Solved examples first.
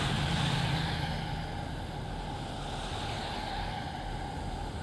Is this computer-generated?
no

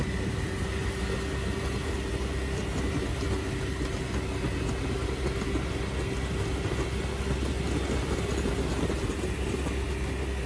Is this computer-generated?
no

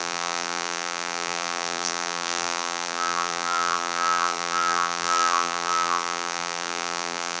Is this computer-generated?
yes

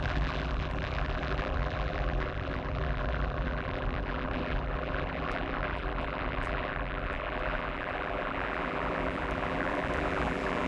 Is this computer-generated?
yes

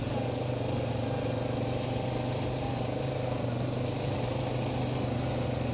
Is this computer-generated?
no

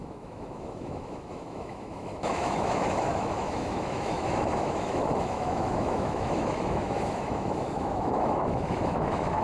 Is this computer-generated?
yes